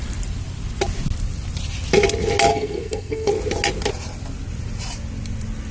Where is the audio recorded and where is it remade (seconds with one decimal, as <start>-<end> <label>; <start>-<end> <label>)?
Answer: 0.0-2.5 recorded; 2.5-3.3 remade; 3.3-5.7 recorded